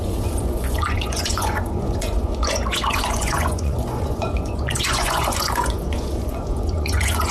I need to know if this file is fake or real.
fake